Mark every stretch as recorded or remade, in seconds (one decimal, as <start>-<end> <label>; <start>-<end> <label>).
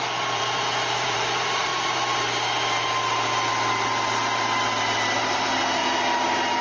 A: 0.0-1.7 remade; 1.7-5.2 recorded; 5.2-5.8 remade; 5.8-6.6 recorded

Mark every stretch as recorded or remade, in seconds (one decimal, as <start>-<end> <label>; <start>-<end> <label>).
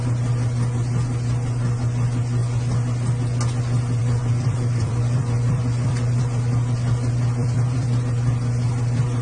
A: 0.0-4.0 recorded; 4.0-6.2 remade; 6.2-7.4 recorded; 7.4-8.0 remade; 8.0-9.2 recorded